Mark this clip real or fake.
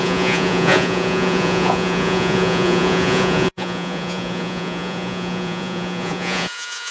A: fake